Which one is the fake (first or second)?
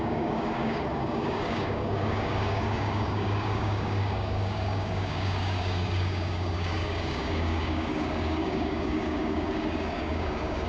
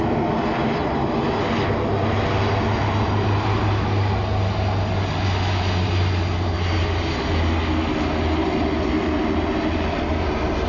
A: first